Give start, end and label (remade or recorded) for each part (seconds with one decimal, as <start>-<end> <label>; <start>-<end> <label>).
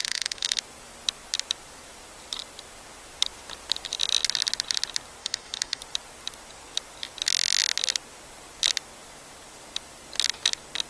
0.0-0.6 remade; 0.6-5.2 recorded; 5.2-5.8 remade; 5.8-10.9 recorded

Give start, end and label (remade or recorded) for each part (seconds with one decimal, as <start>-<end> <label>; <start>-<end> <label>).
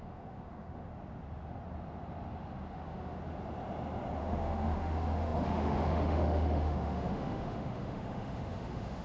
0.0-0.9 remade; 0.9-2.7 recorded; 2.7-3.2 remade; 3.2-4.2 recorded; 4.2-9.0 remade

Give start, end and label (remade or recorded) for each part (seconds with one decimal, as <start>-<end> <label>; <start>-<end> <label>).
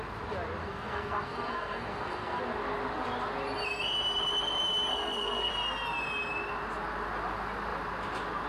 0.0-0.6 recorded; 0.6-2.4 remade; 2.4-4.9 recorded; 4.9-5.5 remade; 5.5-8.5 recorded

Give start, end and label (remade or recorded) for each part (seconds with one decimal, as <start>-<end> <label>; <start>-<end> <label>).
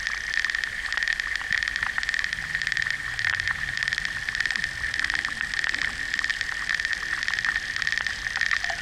0.0-6.3 recorded; 6.3-6.9 remade; 6.9-8.8 recorded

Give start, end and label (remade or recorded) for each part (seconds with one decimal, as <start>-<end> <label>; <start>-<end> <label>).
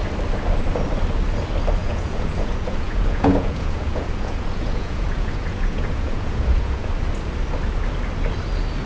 0.0-1.8 recorded; 1.8-6.9 remade; 6.9-8.9 recorded